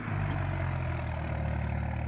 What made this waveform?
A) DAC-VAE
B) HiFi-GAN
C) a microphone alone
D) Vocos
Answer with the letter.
C